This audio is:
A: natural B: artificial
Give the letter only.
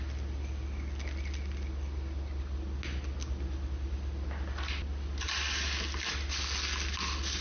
A